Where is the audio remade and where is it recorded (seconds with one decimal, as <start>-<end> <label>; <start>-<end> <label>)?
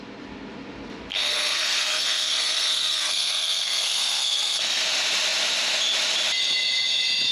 0.0-1.1 recorded; 1.1-4.8 remade; 4.8-7.3 recorded